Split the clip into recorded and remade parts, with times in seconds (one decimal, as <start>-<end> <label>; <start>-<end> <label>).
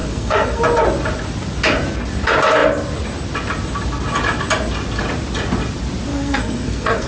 0.0-0.6 remade; 0.6-6.1 recorded; 6.1-7.1 remade